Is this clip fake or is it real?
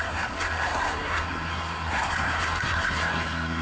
fake